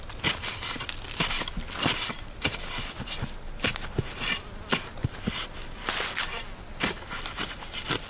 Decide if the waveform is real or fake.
real